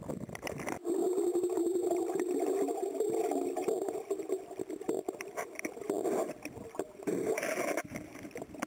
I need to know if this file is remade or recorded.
remade